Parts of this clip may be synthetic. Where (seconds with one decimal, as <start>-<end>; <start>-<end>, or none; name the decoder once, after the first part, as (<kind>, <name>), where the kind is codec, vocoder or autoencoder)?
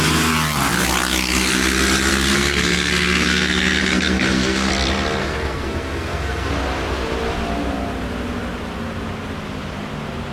2.1-4.7 (codec, SNAC); 5.2-6.5